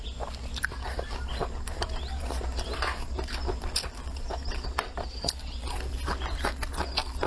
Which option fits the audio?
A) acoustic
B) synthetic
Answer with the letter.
A